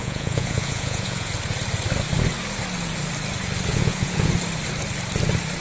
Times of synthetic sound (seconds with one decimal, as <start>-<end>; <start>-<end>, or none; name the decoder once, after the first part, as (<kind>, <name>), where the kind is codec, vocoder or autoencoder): 0.0-1.3 (vocoder, Vocos); 3.7-4.3